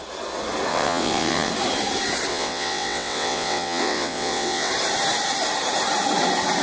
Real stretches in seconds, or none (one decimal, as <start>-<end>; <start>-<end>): 0.0-0.7; 1.5-2.3; 4.7-6.6